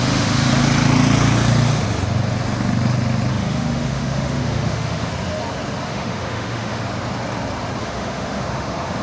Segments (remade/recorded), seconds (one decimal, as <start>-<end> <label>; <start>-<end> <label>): 0.0-0.5 remade; 0.5-3.3 recorded; 3.3-5.1 remade; 5.1-5.9 recorded; 5.9-6.8 remade; 6.8-7.8 recorded; 7.8-9.0 remade